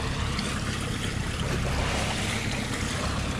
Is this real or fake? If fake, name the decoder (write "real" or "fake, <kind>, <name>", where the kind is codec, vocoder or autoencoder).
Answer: real